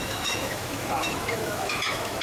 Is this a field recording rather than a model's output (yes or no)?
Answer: no